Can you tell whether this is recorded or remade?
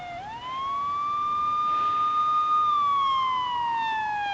recorded